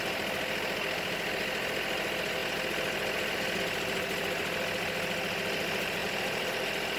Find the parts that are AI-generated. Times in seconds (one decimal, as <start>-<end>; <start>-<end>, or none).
6.0-6.5